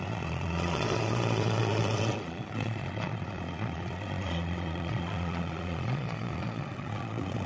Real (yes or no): no